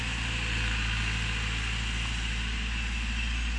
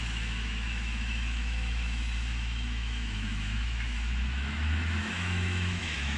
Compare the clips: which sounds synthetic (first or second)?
second